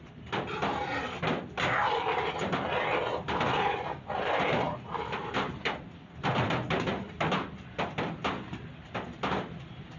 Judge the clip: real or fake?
real